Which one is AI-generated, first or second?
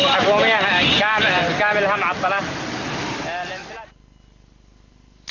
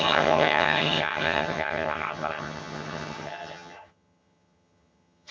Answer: second